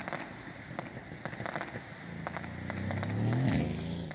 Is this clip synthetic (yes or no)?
no